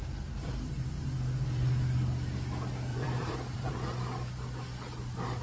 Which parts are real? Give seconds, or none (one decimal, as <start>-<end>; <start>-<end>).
0.7-2.9; 3.7-5.4